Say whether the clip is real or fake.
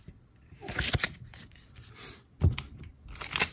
real